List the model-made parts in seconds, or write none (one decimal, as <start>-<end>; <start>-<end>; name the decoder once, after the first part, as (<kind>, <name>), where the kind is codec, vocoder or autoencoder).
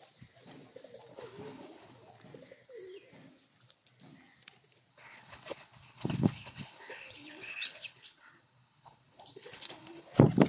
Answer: 1.1-2.1 (codec, HILCodec); 4.9-10.1